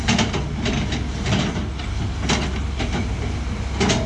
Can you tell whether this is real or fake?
real